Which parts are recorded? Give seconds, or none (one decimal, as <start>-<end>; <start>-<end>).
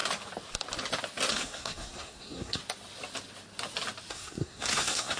0.0-1.3; 2.6-4.1